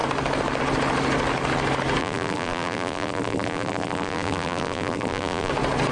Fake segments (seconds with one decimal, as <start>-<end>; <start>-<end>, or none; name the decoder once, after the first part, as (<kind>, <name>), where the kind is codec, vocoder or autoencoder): 2.0-5.5 (vocoder, BigVGAN v2)